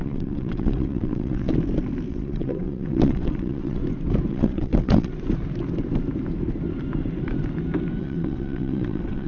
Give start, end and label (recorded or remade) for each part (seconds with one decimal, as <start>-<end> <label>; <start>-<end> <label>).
0.0-1.5 remade; 1.5-2.1 recorded; 2.1-3.8 remade; 3.8-4.3 recorded; 4.3-5.1 remade; 5.1-8.0 recorded; 8.0-9.3 remade